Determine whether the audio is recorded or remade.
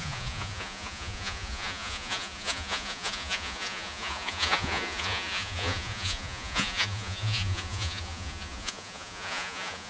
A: remade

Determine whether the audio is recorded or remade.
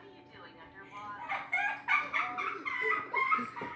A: recorded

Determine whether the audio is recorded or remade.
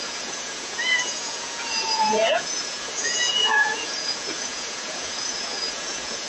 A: remade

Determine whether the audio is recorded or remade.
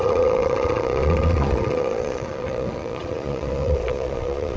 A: remade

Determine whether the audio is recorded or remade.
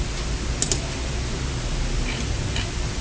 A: recorded